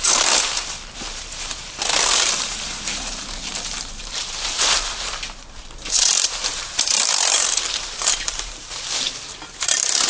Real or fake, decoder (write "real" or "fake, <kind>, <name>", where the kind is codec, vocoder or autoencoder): fake, vocoder, BigVGAN v2